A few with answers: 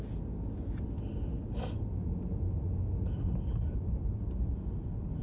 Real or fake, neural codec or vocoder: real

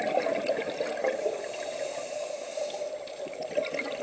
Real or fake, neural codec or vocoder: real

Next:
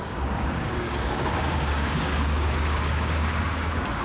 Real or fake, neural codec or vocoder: fake, codec, DAC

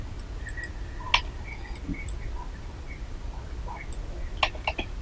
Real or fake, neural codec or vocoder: real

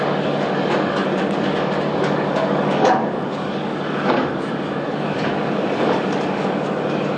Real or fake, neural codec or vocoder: fake, codec, DAC